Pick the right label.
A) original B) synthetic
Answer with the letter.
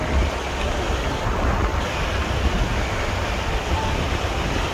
A